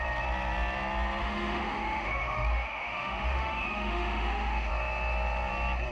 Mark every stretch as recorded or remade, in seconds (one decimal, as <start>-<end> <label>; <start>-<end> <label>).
0.0-1.2 recorded; 1.2-4.7 remade; 4.7-5.9 recorded